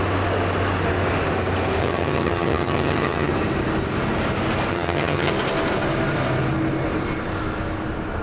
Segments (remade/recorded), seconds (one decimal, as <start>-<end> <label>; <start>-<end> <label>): 0.0-1.8 recorded; 1.8-3.3 remade; 3.3-4.7 recorded; 4.7-5.3 remade; 5.3-8.2 recorded

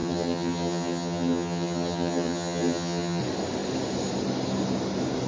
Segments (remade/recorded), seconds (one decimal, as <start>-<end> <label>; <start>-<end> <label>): 0.0-3.2 remade; 3.2-5.3 recorded

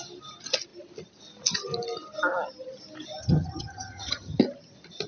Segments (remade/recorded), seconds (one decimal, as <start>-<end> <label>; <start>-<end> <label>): 0.0-3.2 recorded; 3.2-4.4 remade; 4.4-5.1 recorded

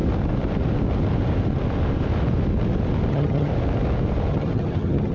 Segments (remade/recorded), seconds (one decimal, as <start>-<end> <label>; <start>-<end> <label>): 0.0-3.1 recorded; 3.1-3.5 remade; 3.5-4.3 recorded; 4.3-5.1 remade

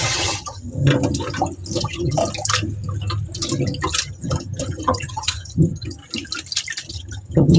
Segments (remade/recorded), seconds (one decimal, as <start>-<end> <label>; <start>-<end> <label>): 0.0-0.9 remade; 0.9-1.8 recorded; 1.8-2.2 remade; 2.2-4.1 recorded; 4.1-6.0 remade; 6.0-6.9 recorded; 6.9-7.6 remade

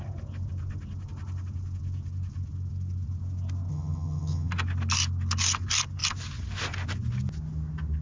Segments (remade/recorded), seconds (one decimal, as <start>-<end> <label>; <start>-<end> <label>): 0.0-3.7 recorded; 3.7-4.5 remade; 4.5-8.0 recorded

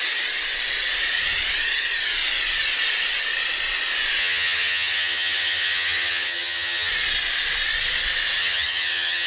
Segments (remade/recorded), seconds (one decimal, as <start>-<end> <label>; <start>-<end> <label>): 0.0-4.2 recorded; 4.2-6.9 remade; 6.9-8.4 recorded; 8.4-9.3 remade